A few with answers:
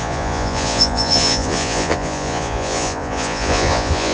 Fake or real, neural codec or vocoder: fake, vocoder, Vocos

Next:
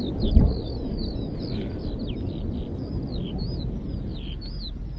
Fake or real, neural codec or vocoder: real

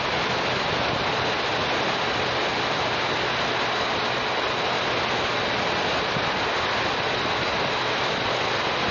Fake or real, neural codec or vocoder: real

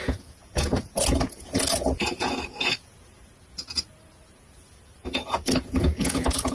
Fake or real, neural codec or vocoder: fake, vocoder, Vocos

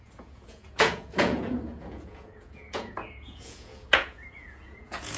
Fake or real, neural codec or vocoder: fake, vocoder, Vocos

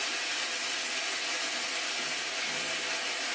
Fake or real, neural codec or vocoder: real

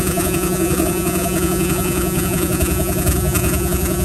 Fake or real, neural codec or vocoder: fake, vocoder, Vocos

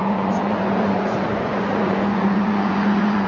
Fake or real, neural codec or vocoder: fake, vocoder, Vocos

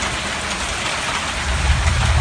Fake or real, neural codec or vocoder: real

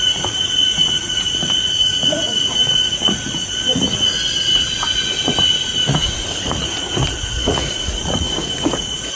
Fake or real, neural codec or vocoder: fake, vocoder, Vocos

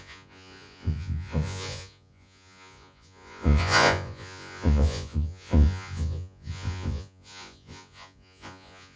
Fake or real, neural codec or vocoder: fake, vocoder, Vocos